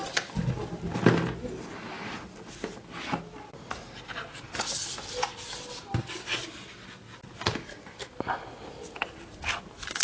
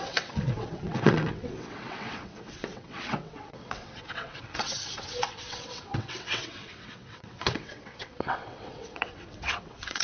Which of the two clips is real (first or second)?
first